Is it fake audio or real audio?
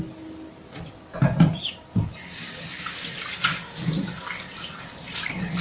real